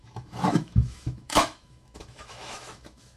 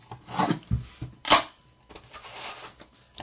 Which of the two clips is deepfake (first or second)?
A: first